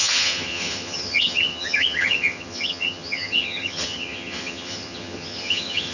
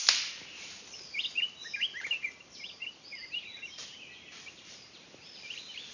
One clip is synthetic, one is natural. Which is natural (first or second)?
second